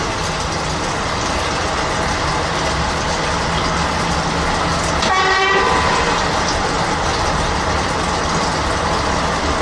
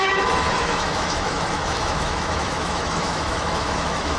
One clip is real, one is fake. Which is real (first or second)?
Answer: first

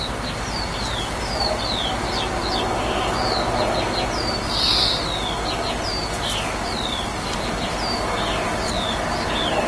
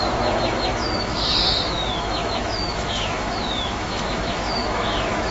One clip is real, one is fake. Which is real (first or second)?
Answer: first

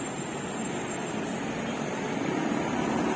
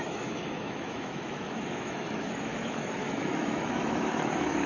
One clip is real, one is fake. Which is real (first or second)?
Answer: first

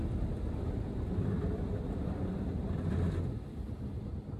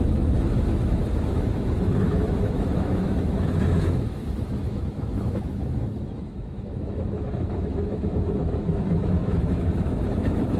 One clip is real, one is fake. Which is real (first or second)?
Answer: first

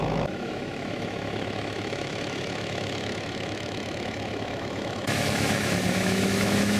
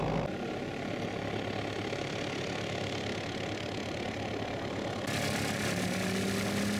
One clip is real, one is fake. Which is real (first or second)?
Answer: second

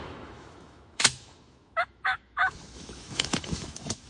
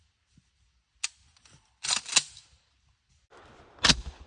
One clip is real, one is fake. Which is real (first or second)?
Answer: second